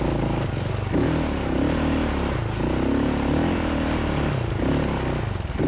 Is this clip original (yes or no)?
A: yes